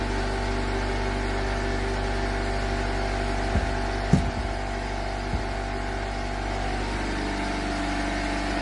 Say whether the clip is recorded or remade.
recorded